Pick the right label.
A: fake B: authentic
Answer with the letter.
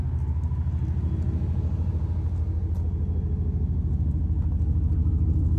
B